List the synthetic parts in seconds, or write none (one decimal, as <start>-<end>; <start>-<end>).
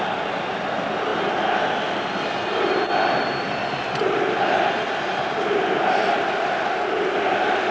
none